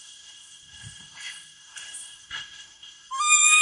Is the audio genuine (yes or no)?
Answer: no